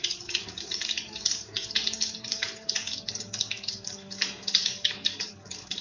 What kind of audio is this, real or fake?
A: fake